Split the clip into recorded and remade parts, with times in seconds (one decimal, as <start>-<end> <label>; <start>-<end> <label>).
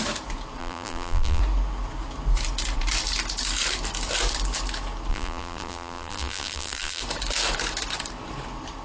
0.0-0.6 recorded; 0.6-1.4 remade; 1.4-5.1 recorded; 5.1-7.0 remade; 7.0-8.8 recorded